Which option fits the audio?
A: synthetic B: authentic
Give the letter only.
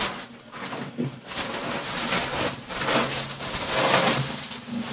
B